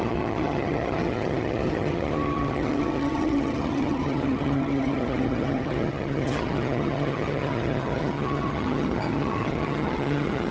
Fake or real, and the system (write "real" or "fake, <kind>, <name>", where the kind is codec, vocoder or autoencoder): fake, vocoder, HiFi-GAN